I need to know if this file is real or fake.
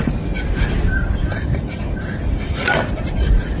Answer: real